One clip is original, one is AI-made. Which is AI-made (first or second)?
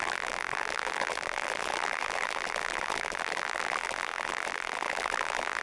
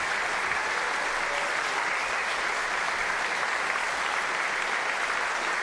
first